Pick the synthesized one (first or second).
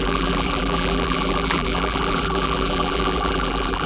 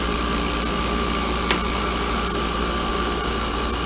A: first